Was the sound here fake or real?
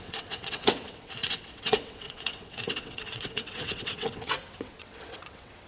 fake